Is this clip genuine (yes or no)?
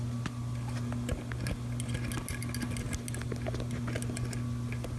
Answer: yes